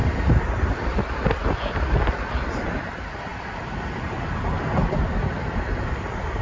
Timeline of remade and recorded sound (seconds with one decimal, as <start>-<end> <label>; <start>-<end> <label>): 0.0-3.3 remade; 3.3-3.9 recorded; 3.9-6.4 remade